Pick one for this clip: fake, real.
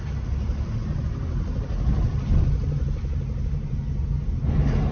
real